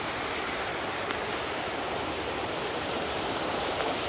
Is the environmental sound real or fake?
fake